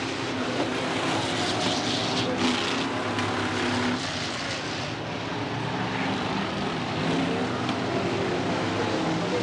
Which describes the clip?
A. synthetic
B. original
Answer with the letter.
B